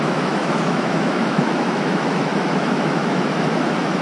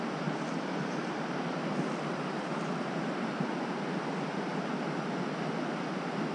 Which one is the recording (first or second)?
second